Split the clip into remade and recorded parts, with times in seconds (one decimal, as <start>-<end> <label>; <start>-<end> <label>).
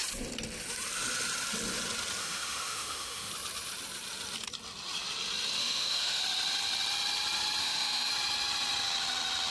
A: 0.0-2.2 recorded; 2.2-3.3 remade; 3.3-5.6 recorded; 5.6-6.2 remade; 6.2-7.6 recorded; 7.6-8.1 remade; 8.1-9.5 recorded